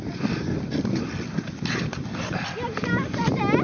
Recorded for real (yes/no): yes